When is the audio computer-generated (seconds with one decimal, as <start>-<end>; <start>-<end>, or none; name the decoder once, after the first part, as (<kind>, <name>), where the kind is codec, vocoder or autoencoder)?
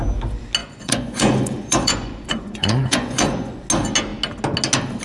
0.6-3.6 (vocoder, Vocos)